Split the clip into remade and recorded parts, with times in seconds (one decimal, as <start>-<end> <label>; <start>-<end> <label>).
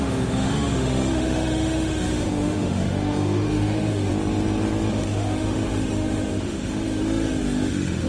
0.0-4.1 remade; 4.1-4.9 recorded; 4.9-8.1 remade